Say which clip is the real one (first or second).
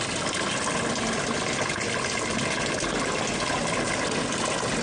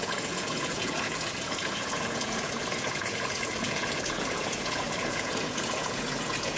first